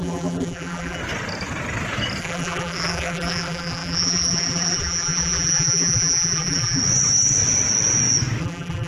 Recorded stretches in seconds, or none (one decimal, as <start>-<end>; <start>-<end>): 1.0-2.2; 6.8-8.4